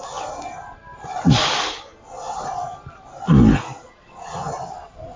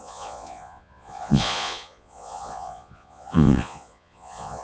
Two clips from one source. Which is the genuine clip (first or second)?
first